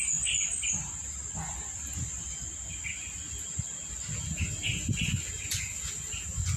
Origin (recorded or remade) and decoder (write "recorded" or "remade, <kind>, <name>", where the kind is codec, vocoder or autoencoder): recorded